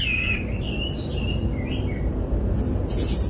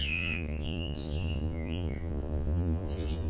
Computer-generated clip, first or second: second